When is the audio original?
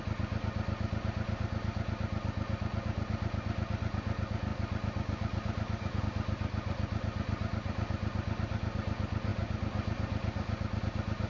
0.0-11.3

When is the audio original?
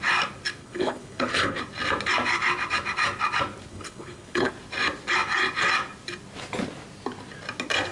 0.0-0.6; 1.6-3.7; 4.5-7.9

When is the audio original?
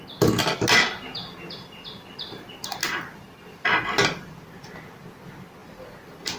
0.0-6.4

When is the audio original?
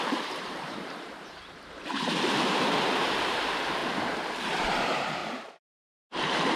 3.8-4.4; 5.2-5.8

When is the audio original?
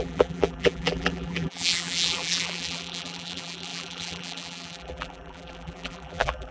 none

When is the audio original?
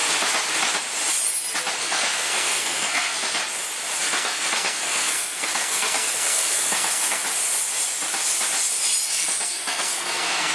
0.0-1.8; 3.4-4.0; 7.2-9.1